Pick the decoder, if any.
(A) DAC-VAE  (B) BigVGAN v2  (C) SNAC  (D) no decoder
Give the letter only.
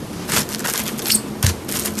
D